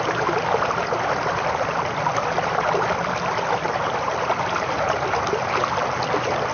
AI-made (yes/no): no